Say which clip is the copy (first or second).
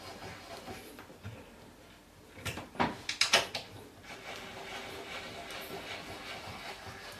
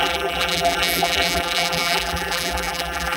second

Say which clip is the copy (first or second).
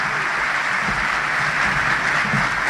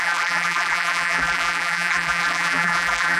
second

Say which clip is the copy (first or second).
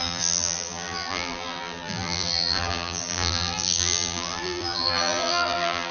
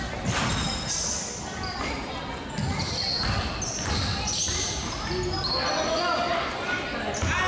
first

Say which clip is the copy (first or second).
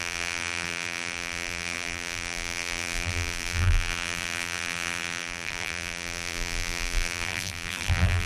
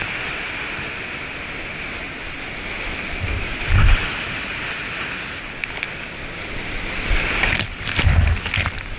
first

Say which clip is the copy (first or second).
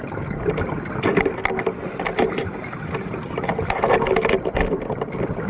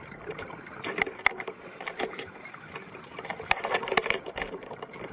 second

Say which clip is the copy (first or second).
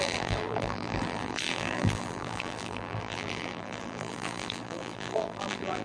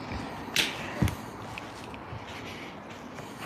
first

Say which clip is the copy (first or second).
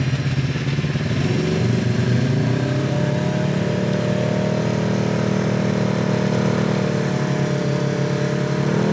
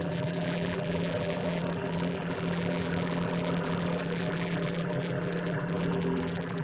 second